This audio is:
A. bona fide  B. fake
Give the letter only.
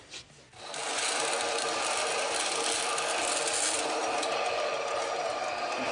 A